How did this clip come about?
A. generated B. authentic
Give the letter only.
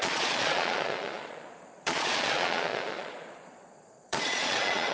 A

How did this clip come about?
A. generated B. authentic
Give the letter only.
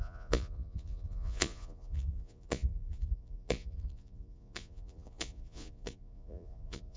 A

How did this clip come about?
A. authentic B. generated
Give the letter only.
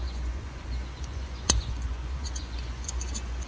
B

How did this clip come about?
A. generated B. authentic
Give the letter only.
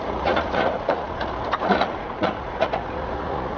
A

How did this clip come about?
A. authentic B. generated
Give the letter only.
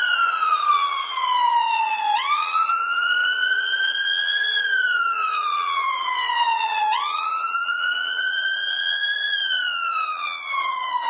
B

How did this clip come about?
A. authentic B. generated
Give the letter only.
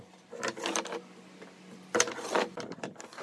A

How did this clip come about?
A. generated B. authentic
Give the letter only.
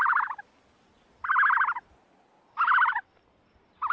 B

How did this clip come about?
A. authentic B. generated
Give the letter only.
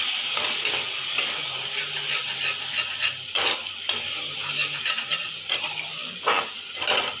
A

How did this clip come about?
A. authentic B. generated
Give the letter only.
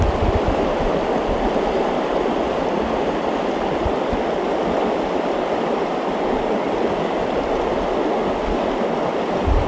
A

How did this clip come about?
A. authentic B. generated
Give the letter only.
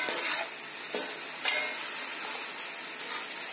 A